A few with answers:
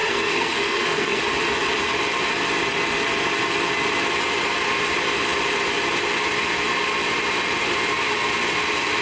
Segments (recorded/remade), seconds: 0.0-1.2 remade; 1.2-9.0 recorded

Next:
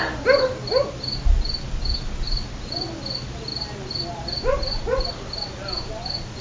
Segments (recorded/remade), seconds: 0.0-6.4 recorded